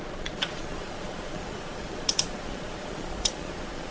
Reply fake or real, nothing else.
fake